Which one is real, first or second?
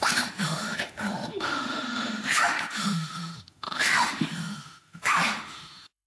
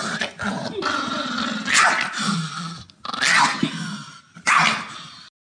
second